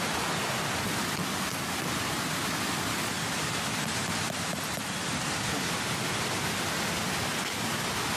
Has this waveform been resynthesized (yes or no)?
no